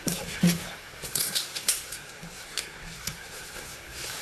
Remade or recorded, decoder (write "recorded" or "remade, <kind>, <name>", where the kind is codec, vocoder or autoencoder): remade, codec, SNAC